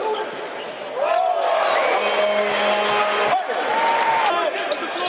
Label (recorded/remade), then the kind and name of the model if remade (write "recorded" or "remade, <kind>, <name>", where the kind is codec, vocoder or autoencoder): recorded